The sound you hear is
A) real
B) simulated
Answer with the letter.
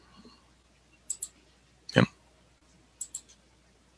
A